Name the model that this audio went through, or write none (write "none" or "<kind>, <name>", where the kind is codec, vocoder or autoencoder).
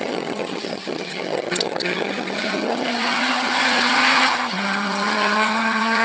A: vocoder, HiFi-GAN